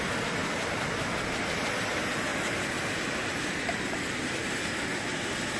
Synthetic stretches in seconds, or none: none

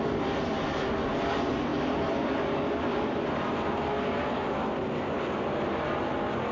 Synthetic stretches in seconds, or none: none

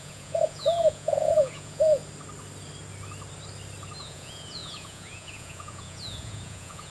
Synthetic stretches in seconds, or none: 0.0-2.0 (vocoder, Vocos); 4.0-6.9

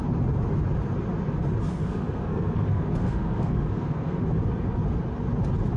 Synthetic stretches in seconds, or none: 1.7-4.2 (codec, SNAC)

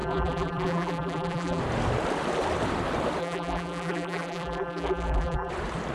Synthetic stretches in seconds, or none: 0.0-1.6 (vocoder, BigVGAN v2); 3.2-5.5